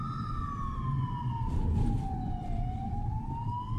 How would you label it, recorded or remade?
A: recorded